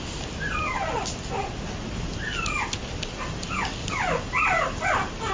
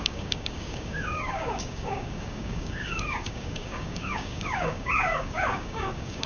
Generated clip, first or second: second